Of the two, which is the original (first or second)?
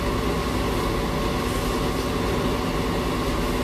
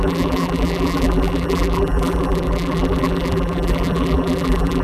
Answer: first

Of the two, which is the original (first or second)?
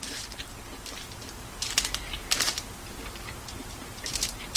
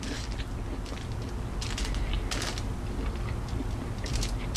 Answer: second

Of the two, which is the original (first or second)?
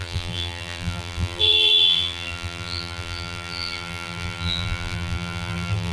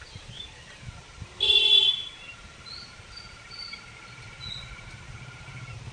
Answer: second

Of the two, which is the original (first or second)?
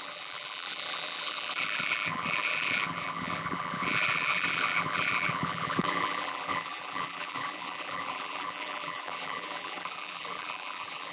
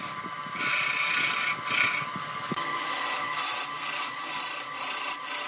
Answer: second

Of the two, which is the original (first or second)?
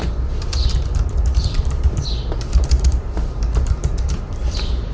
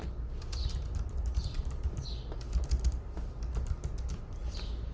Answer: second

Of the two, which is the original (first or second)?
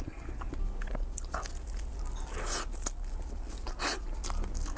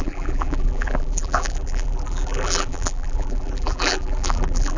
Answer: first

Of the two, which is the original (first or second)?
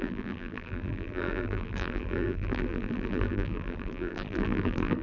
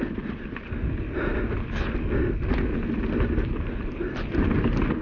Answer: second